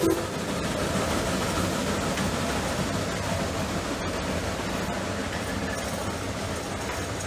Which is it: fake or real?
real